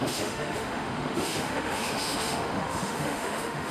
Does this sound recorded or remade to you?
remade